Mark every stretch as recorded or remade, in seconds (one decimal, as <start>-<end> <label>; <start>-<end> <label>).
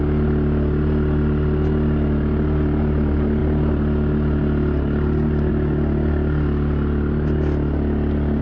0.0-8.4 recorded